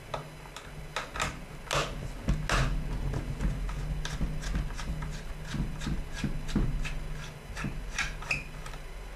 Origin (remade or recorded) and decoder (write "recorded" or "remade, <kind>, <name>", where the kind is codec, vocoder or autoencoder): recorded